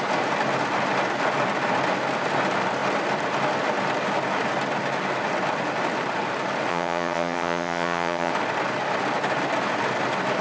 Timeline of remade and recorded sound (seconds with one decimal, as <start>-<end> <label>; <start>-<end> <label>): 0.0-6.7 recorded; 6.7-8.3 remade; 8.3-10.4 recorded